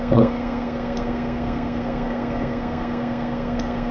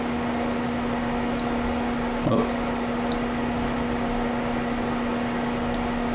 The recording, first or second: second